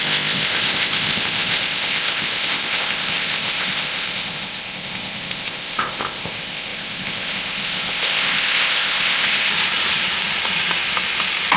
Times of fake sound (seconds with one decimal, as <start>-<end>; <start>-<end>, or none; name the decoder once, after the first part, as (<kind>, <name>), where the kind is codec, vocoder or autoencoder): 0.0-9.5 (codec, ZipCodec)